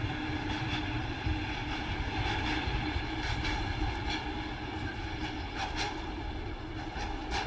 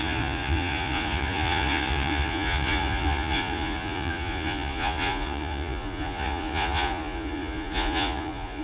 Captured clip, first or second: first